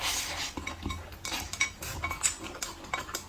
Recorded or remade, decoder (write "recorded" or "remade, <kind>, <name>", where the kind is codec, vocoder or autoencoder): recorded